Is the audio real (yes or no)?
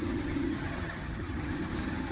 no